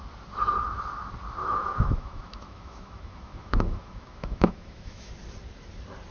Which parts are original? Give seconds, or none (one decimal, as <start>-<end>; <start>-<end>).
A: 0.0-1.4; 5.1-6.1